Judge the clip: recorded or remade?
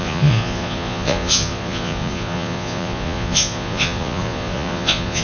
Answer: remade